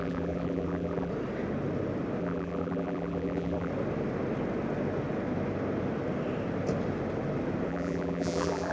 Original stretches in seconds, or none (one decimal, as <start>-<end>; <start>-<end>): 1.1-2.2; 3.7-7.7